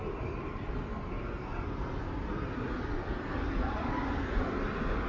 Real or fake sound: real